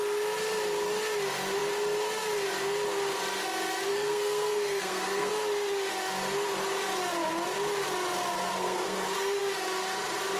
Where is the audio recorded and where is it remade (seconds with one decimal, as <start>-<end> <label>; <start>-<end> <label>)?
0.0-3.9 recorded; 3.9-5.3 remade; 5.3-8.5 recorded; 8.5-9.4 remade; 9.4-10.4 recorded